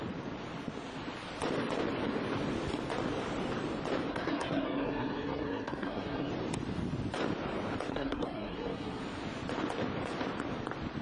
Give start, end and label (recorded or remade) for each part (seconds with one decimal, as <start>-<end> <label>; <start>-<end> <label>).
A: 0.0-4.1 recorded; 4.1-6.3 remade; 6.3-7.9 recorded; 7.9-9.0 remade; 9.0-11.0 recorded